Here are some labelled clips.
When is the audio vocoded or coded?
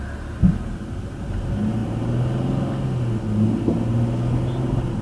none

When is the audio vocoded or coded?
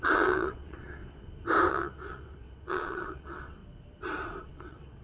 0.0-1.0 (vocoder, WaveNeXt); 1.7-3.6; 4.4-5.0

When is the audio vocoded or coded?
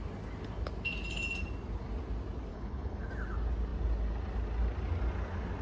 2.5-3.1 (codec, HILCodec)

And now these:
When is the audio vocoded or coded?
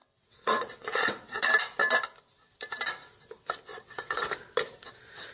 0.0-1.4 (vocoder, WaveNeXt); 3.7-4.3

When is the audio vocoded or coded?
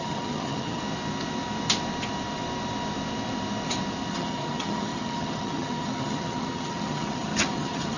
0.0-0.8 (vocoder, HiFi-GAN); 4.1-8.0